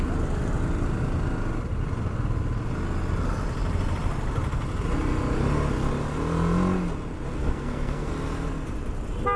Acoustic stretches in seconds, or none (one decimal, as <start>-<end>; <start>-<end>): 0.0-7.4; 8.1-9.4